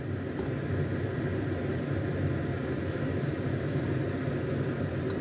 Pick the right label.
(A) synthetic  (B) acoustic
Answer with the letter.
B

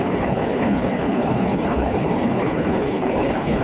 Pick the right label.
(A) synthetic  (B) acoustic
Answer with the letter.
A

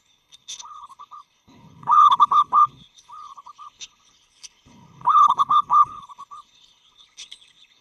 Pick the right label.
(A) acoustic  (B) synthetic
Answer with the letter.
B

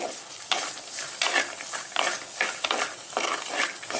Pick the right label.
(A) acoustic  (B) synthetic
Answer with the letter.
A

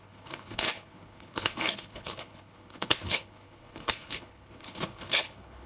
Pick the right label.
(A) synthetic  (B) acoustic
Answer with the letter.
A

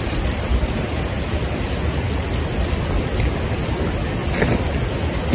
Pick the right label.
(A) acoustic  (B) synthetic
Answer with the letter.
A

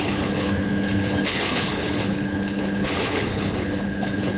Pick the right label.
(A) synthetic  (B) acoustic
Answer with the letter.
A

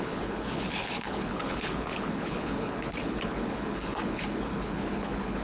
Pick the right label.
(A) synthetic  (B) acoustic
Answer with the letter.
A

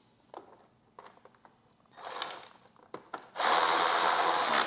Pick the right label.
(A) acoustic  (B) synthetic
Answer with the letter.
A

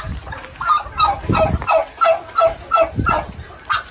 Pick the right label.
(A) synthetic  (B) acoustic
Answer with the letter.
B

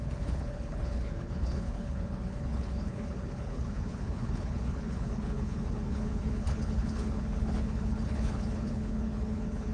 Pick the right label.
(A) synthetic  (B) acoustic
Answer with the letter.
A